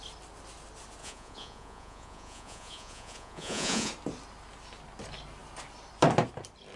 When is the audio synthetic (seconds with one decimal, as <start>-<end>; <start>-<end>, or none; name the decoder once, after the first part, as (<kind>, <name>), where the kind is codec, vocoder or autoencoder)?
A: 1.0-3.9 (vocoder, Vocos)